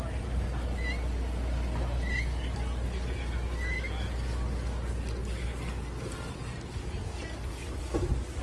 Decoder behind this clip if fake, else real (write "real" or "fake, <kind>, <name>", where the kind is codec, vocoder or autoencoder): real